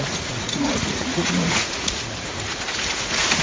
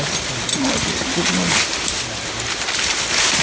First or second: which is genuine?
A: second